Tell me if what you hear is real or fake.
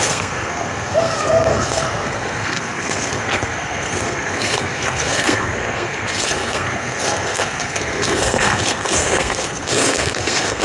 fake